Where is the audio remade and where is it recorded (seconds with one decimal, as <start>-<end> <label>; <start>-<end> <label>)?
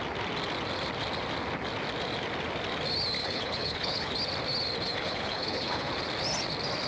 0.0-3.2 recorded; 3.2-4.1 remade; 4.1-4.9 recorded; 4.9-5.9 remade; 5.9-6.9 recorded